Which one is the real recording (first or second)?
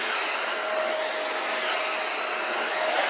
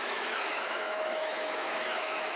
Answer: first